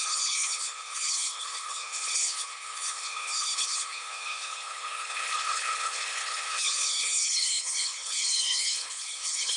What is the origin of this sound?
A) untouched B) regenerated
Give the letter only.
B